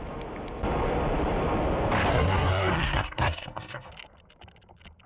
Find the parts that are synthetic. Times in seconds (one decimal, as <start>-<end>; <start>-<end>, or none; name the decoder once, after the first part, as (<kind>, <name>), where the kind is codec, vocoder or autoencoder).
2.1-3.9 (codec, SNAC)